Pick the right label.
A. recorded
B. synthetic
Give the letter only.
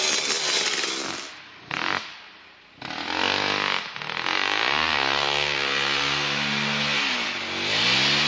A